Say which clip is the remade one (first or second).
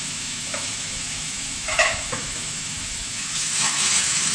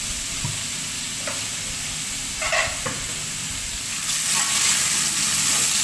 first